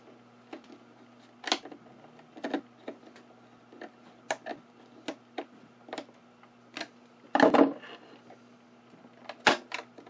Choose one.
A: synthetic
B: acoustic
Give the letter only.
B